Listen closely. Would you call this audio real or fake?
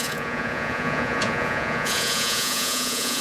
fake